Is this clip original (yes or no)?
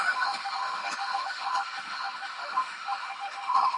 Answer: no